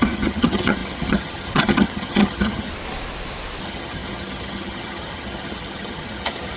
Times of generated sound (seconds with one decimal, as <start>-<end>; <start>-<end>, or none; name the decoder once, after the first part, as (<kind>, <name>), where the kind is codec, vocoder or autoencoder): 0.0-2.7 (vocoder, HiFi-GAN); 3.6-6.6